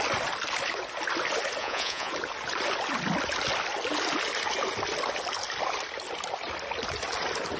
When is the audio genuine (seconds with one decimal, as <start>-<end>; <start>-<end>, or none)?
0.0-1.6; 2.1-7.6